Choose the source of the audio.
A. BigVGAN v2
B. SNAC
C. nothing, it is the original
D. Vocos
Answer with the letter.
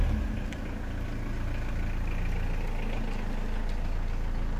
C